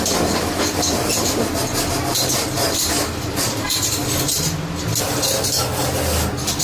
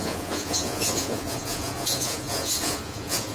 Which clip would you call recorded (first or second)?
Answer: first